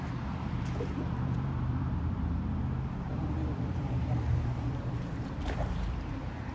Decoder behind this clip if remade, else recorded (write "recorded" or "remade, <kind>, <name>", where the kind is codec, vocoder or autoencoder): remade, vocoder, BigVGAN v2